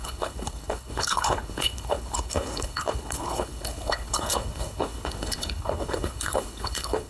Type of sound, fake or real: fake